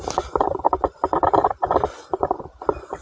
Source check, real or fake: real